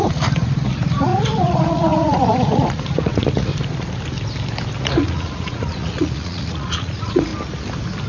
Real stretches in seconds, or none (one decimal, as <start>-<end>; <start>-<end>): 3.5-4.8; 7.3-8.1